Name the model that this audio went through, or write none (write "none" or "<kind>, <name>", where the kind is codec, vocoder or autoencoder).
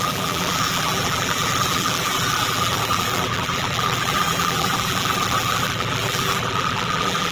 vocoder, BigVGAN v2